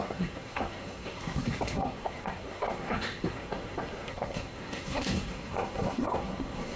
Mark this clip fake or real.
fake